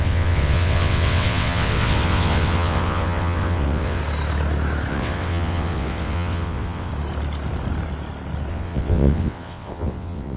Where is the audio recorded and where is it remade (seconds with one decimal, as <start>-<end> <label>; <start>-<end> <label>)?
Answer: 0.0-4.0 remade; 4.0-4.9 recorded; 4.9-6.9 remade; 6.9-8.5 recorded; 8.5-10.4 remade